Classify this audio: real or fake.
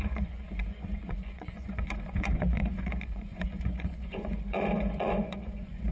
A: fake